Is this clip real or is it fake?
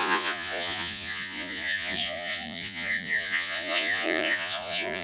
fake